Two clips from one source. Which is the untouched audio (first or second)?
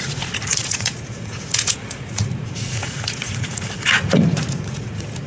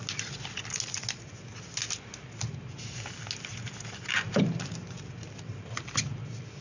second